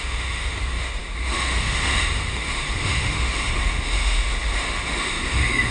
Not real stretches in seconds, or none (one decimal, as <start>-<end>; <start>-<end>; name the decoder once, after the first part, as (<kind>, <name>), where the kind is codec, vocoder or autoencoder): 0.0-5.7 (autoencoder, DAC-VAE)